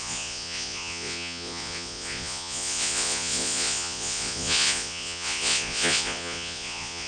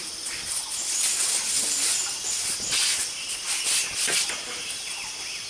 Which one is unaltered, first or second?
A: second